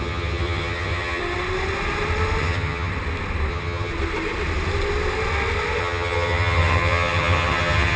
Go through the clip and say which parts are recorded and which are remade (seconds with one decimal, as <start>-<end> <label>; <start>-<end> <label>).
0.0-1.2 remade; 1.2-2.4 recorded; 2.4-2.9 remade; 2.9-3.5 recorded; 3.5-3.9 remade; 3.9-5.8 recorded; 5.8-8.0 remade